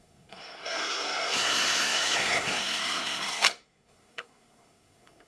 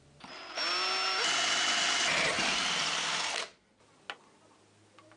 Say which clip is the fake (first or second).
first